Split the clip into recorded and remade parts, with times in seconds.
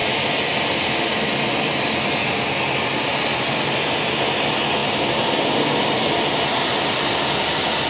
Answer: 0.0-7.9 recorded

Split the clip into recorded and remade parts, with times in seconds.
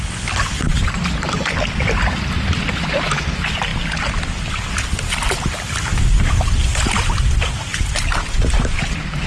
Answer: 0.0-9.3 recorded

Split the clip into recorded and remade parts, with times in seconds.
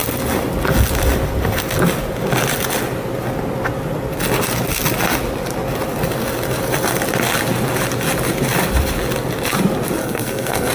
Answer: 0.0-10.0 recorded; 10.0-10.7 remade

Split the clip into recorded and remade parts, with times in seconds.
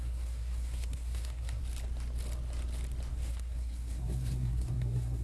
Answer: 0.0-1.6 remade; 1.6-3.1 recorded; 3.1-5.2 remade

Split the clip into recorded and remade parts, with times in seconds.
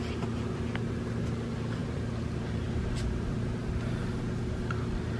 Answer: 0.0-5.2 recorded